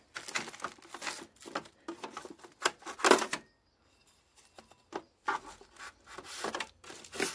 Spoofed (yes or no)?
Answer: no